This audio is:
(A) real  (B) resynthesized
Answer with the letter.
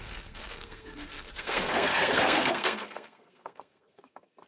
B